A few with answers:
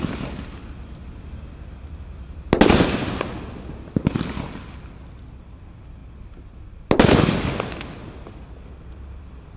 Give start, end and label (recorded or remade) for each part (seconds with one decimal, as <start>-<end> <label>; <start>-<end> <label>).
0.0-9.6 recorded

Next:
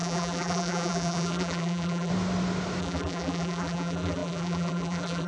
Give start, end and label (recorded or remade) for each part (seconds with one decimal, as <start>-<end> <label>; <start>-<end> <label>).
0.0-2.1 remade; 2.1-2.8 recorded; 2.8-5.3 remade

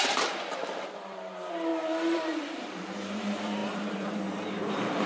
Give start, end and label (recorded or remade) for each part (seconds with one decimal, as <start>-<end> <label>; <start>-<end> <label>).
0.0-5.1 remade

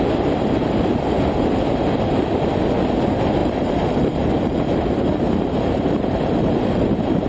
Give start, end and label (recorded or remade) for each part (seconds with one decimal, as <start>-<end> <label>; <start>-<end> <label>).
0.0-3.4 recorded; 3.4-7.3 remade